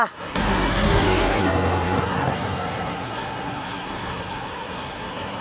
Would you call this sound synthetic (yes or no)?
yes